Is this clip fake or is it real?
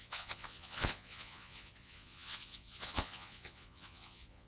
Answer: fake